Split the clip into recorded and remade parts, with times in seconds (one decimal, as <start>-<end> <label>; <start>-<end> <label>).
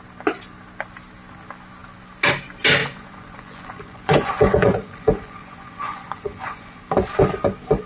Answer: 0.0-2.8 recorded; 2.8-6.8 remade; 6.8-7.9 recorded